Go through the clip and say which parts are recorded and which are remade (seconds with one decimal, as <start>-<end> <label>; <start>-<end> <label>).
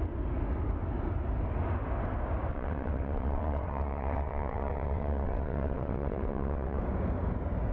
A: 0.0-2.5 recorded; 2.5-6.8 remade; 6.8-7.7 recorded